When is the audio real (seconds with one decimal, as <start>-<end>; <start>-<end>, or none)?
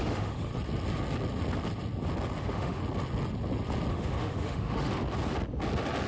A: 0.5-2.4; 2.8-3.9; 4.9-6.1